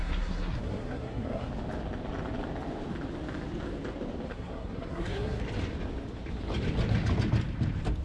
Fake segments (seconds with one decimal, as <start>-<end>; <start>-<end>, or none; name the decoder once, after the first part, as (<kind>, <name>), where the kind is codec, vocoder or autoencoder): 0.0-1.5 (codec, SNAC); 4.3-5.4